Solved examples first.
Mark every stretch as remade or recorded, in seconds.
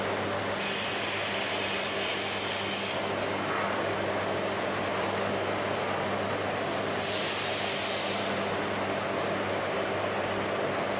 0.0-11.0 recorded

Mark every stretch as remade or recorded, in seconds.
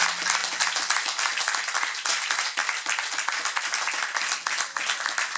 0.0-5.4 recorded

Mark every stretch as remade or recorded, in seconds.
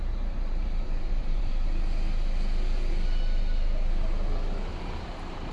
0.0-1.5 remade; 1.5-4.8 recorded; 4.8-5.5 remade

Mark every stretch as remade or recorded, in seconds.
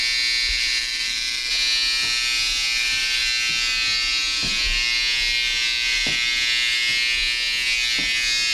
0.0-0.8 recorded; 0.8-1.5 remade; 1.5-8.5 recorded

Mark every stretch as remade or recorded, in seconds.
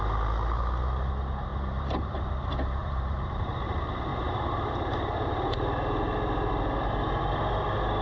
0.0-1.5 recorded; 1.5-2.3 remade; 2.3-2.8 recorded; 2.8-3.5 remade; 3.5-4.1 recorded; 4.1-5.5 remade; 5.5-8.0 recorded